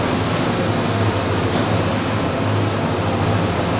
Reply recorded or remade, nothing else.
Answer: recorded